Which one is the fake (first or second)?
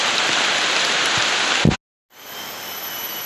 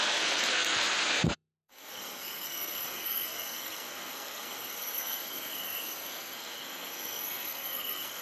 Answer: second